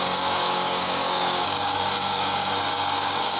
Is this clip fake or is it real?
fake